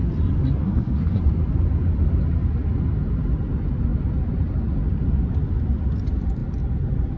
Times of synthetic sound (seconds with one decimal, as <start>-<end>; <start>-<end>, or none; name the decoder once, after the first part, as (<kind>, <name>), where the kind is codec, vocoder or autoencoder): 0.6-1.2 (codec, SNAC)